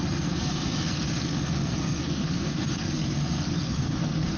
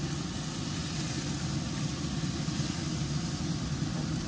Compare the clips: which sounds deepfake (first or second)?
first